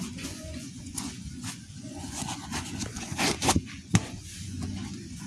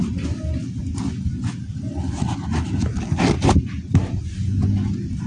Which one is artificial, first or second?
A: first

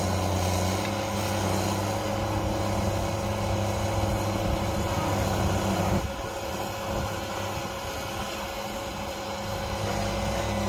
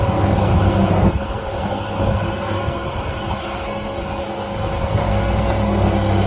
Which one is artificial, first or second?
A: second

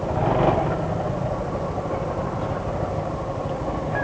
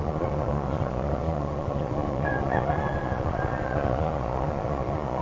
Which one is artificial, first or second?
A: second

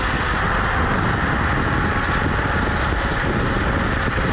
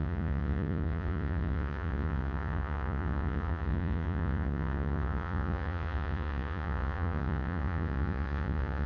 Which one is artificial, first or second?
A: second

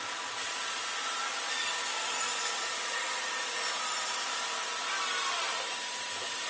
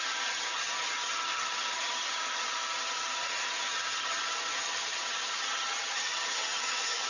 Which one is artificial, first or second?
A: second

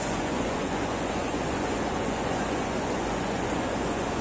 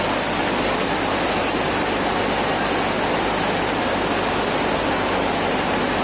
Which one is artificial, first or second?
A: first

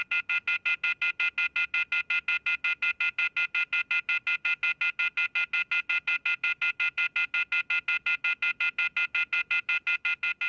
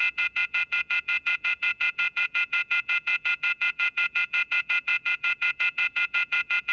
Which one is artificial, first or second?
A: second